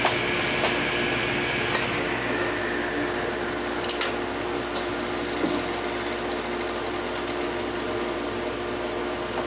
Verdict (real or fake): real